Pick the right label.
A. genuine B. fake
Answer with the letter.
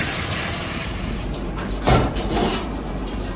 B